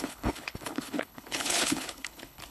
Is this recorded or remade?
remade